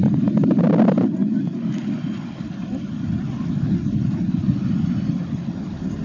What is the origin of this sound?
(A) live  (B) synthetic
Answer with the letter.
A